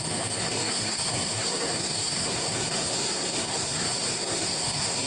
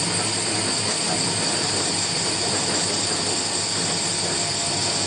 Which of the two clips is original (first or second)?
second